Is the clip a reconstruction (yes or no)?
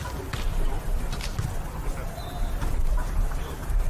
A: no